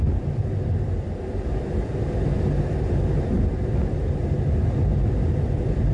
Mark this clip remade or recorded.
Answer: recorded